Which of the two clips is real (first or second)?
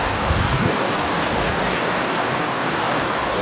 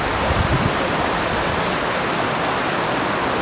second